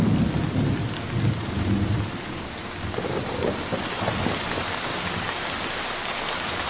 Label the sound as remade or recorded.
recorded